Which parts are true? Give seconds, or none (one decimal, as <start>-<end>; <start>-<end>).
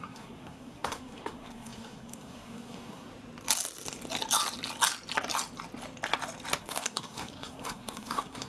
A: 3.1-6.6